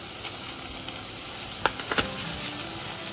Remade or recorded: recorded